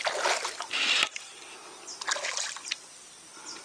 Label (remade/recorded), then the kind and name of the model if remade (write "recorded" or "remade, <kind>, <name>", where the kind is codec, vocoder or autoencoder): recorded